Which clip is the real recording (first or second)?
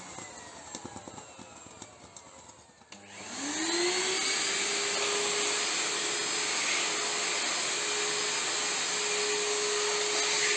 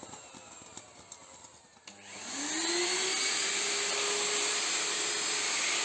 first